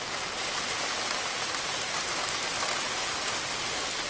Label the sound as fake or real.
real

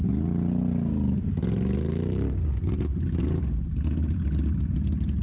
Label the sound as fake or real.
real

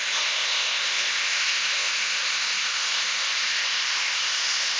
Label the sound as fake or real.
fake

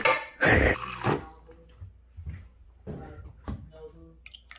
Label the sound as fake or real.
real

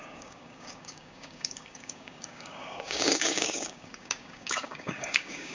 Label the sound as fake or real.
fake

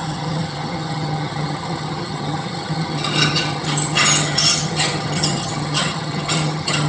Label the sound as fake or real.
fake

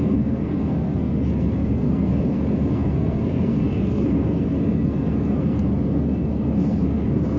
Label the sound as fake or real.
fake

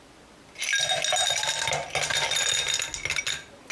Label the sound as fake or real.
real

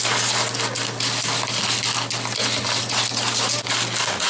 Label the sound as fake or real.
real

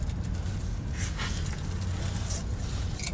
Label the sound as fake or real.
real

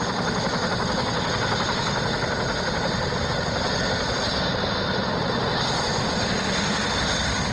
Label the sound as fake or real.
real